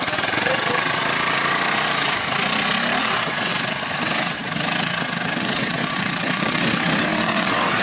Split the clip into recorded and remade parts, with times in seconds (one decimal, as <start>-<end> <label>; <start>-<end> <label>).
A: 0.0-1.0 remade; 1.0-3.0 recorded; 3.0-3.5 remade; 3.5-4.0 recorded; 4.0-7.8 remade